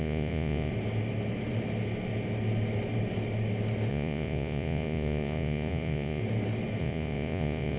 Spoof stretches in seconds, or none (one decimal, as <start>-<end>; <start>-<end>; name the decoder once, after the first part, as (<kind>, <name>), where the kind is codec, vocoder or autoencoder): 0.0-0.7 (vocoder, Vocos); 3.9-6.2; 6.8-7.8